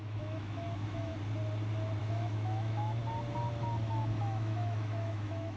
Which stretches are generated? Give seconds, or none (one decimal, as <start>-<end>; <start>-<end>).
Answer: 0.0-1.1; 2.0-3.0; 3.9-5.6